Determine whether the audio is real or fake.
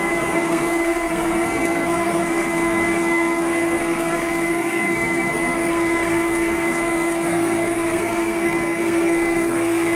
fake